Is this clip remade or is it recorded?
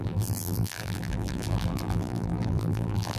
remade